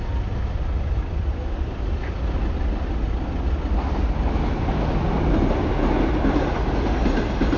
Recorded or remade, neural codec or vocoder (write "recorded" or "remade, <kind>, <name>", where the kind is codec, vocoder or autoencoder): recorded